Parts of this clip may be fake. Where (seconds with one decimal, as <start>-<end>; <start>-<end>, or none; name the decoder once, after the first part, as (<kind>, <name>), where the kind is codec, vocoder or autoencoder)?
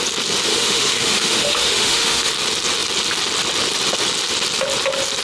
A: 0.5-2.3 (autoencoder, DAC-VAE)